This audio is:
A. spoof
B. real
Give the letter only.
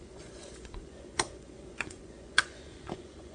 A